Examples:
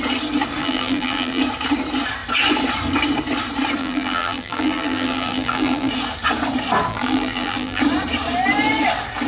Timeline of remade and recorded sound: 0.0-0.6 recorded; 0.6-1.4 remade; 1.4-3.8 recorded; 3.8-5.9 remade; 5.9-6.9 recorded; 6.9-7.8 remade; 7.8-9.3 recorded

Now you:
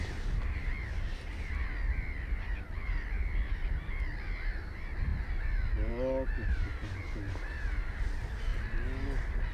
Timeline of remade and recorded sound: 0.0-9.5 recorded

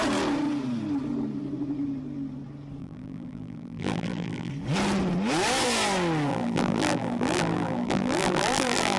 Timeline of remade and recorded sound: 0.0-2.8 recorded; 2.8-4.5 remade; 4.5-6.3 recorded; 6.3-9.0 remade

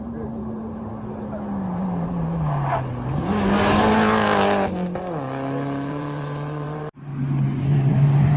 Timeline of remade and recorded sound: 0.0-0.9 remade; 0.9-5.9 recorded; 5.9-7.1 remade; 7.1-7.9 recorded; 7.9-8.4 remade

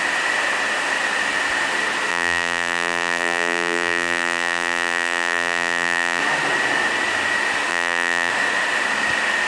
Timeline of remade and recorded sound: 0.0-2.1 recorded; 2.1-6.2 remade; 6.2-7.7 recorded; 7.7-8.3 remade; 8.3-9.5 recorded

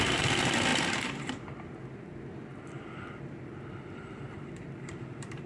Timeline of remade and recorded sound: 0.0-5.5 remade